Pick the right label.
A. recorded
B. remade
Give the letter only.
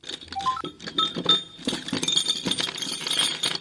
A